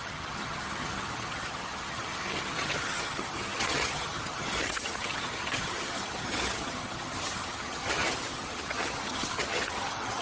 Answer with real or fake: fake